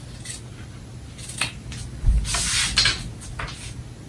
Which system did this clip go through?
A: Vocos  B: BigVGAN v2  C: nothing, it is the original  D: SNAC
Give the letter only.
C